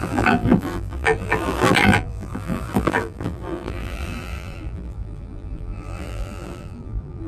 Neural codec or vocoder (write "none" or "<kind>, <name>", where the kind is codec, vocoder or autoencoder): vocoder, BigVGAN v2